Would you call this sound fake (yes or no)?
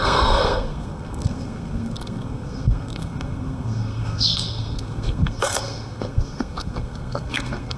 yes